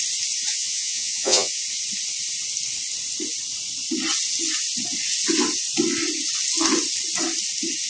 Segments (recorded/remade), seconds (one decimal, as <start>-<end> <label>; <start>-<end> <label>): 0.0-0.5 recorded; 0.5-1.6 remade; 1.6-7.9 recorded